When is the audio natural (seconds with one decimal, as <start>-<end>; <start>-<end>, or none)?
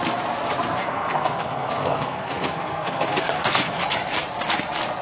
0.0-0.8; 3.8-5.0